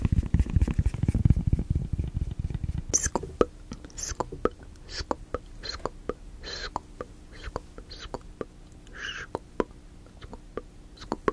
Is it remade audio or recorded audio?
recorded